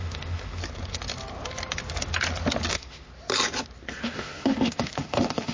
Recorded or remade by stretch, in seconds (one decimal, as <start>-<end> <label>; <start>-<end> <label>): 0.0-0.6 remade; 0.6-2.7 recorded; 2.7-3.1 remade; 3.1-3.9 recorded; 3.9-5.5 remade